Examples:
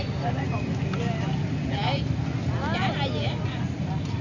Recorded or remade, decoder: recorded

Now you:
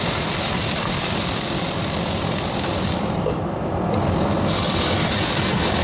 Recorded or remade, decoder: recorded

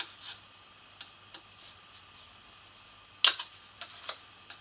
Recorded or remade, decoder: recorded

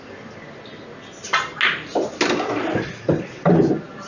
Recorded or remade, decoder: recorded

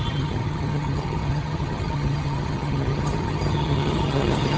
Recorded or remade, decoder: remade, vocoder, HiFi-GAN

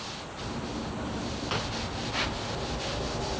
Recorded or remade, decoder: recorded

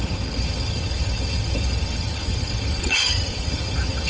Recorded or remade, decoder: remade, vocoder, HiFi-GAN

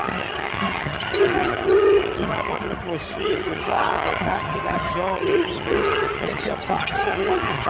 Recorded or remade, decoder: remade, vocoder, HiFi-GAN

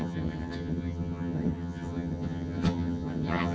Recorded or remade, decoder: remade, vocoder, HiFi-GAN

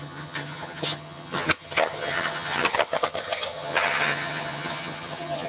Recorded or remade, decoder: remade, vocoder, HiFi-GAN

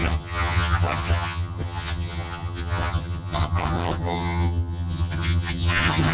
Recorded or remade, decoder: remade, vocoder, HiFi-GAN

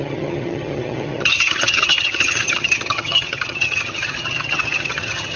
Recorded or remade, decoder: remade, vocoder, HiFi-GAN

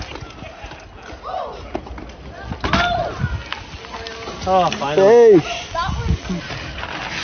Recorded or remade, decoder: recorded